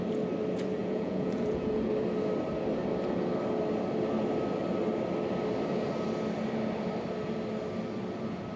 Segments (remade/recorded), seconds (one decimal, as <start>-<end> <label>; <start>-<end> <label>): 0.0-0.8 recorded; 0.8-1.9 remade; 1.9-8.6 recorded